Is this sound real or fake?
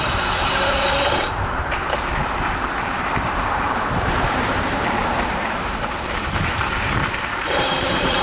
fake